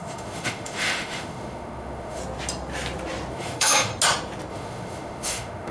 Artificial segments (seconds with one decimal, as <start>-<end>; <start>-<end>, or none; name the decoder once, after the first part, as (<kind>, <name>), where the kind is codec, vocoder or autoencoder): 0.0-2.2 (autoencoder, DAC-VAE); 3.3-3.9; 4.5-5.7